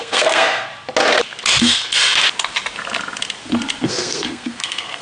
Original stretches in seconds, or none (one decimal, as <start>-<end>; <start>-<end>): 0.7-1.6; 2.0-3.8

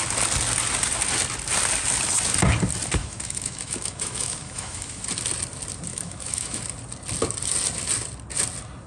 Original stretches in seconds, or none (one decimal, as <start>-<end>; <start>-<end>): 0.0-3.0; 5.0-5.9; 6.6-8.9

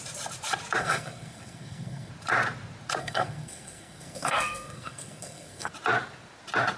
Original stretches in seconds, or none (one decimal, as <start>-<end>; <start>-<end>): 0.0-0.8; 2.1-3.0; 5.7-6.8

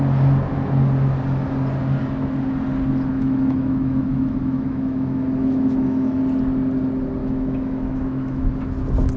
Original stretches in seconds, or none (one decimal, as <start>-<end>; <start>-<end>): 0.0-3.1; 6.2-7.2; 8.5-9.2

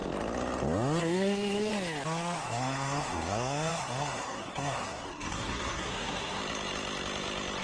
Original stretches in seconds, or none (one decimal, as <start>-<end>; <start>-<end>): 0.0-1.0; 1.7-2.4; 6.4-7.6

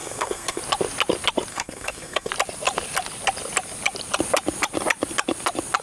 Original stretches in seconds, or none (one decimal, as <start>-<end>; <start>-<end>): 0.6-1.5; 2.3-5.8

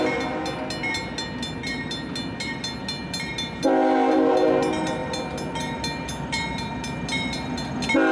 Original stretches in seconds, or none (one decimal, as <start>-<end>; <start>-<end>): 0.0-8.1